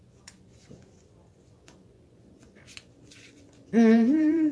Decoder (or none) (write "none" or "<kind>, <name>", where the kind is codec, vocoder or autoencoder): vocoder, Vocos